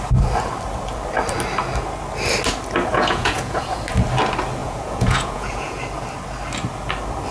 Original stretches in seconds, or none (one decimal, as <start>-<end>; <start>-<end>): 0.0-2.9; 3.8-4.6; 5.8-7.3